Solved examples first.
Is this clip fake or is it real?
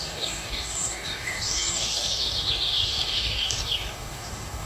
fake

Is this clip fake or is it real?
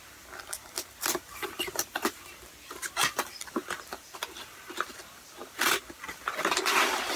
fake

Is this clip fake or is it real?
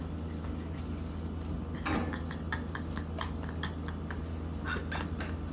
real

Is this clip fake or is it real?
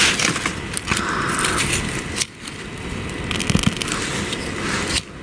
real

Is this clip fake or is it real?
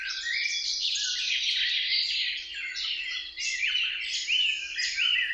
fake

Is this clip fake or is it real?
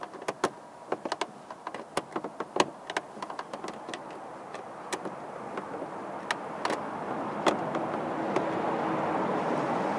real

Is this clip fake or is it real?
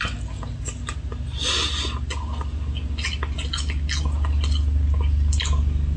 real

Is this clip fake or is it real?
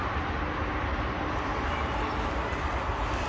real